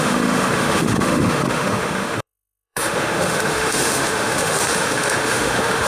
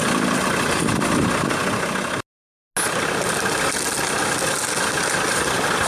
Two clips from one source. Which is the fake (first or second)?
first